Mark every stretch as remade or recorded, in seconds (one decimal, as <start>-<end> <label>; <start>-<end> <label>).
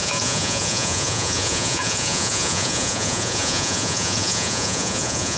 0.0-5.4 remade